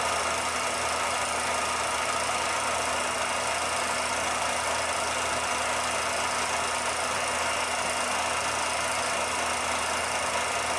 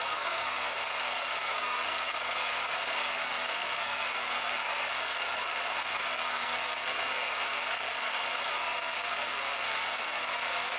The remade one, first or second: second